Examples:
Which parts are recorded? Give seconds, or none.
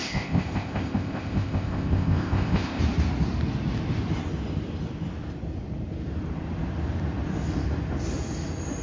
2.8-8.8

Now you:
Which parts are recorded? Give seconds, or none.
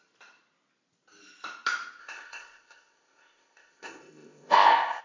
0.0-2.0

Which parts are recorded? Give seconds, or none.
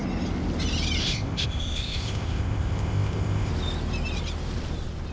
0.0-1.0; 3.5-5.1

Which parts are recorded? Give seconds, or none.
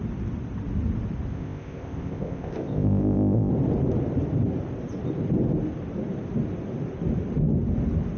0.0-1.3; 3.5-8.2